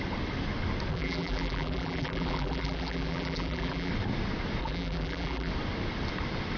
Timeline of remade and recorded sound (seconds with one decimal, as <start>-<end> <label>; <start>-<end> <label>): 0.0-0.9 recorded; 0.9-3.9 remade; 3.9-4.6 recorded; 4.6-5.5 remade; 5.5-6.6 recorded